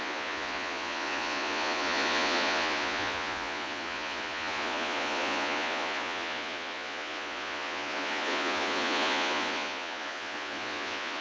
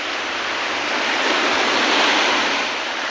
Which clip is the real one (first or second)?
second